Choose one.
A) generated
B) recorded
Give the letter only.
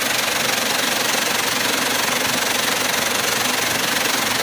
B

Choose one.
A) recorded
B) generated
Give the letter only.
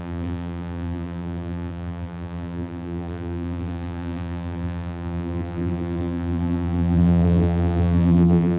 B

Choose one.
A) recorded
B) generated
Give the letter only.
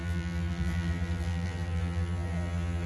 B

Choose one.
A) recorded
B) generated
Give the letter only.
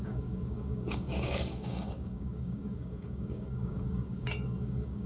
B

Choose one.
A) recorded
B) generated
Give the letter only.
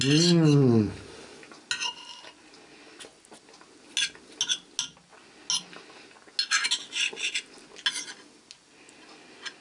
A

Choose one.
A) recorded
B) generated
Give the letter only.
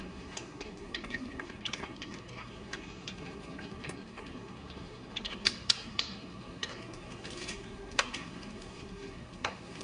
B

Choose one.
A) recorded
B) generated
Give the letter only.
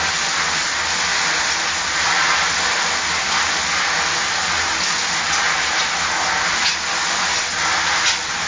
A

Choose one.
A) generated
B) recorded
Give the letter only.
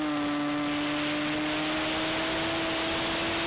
B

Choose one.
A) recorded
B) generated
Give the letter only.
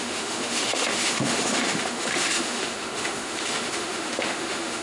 B